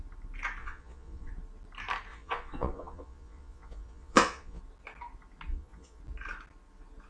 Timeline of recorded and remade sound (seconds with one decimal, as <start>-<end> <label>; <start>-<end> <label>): 0.0-0.6 recorded; 0.6-1.3 remade; 1.3-2.1 recorded; 2.1-4.6 remade; 4.6-5.5 recorded; 5.5-6.0 remade; 6.0-7.1 recorded